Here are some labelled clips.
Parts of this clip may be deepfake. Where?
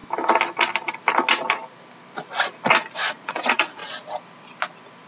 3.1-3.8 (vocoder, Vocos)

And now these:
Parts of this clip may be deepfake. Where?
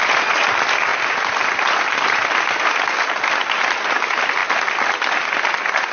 none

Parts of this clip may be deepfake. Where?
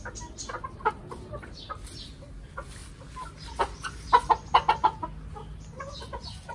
none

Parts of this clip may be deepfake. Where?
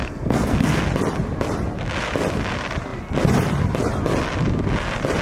0.0-0.8 (codec, SNAC)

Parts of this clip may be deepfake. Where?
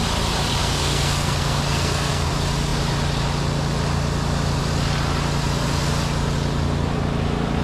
0.6-2.3 (codec, SNAC)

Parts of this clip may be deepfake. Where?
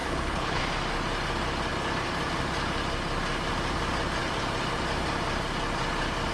0.0-0.6 (codec, HILCodec)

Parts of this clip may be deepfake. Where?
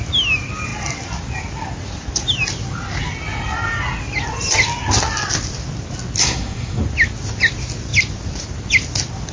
6.2-6.8 (codec, SNAC)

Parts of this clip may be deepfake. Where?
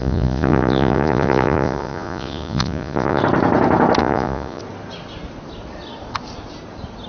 0.0-3.2 (vocoder, Vocos); 4.0-4.6